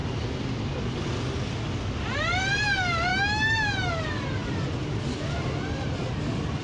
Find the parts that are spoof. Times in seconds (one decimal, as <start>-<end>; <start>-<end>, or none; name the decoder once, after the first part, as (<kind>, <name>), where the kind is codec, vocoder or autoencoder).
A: 3.1-3.9 (autoencoder, DAC-VAE)